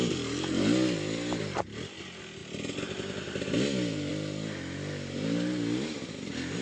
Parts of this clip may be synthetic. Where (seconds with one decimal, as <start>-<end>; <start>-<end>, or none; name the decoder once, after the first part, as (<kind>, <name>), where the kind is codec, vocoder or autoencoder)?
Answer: none